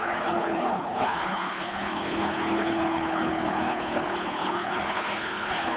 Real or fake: fake